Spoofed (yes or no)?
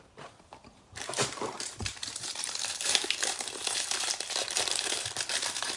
yes